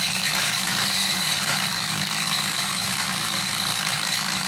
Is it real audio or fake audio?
fake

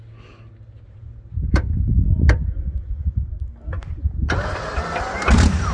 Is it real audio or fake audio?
real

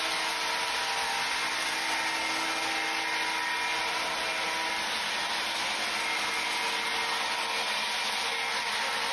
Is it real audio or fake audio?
real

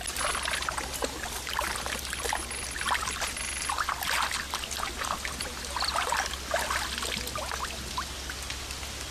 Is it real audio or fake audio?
real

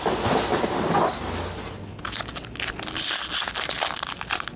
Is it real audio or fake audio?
real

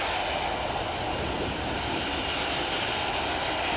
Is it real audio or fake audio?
real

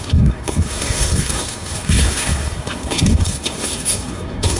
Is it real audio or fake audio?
fake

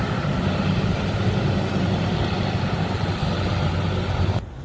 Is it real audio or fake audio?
real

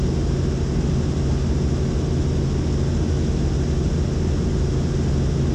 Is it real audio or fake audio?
real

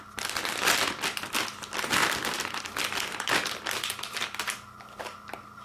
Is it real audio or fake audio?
real